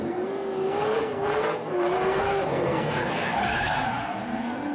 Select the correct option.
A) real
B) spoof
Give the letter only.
B